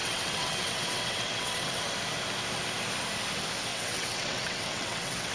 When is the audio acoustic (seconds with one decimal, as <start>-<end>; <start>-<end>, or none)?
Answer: 1.8-3.7